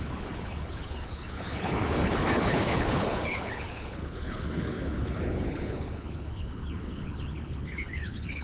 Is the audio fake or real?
fake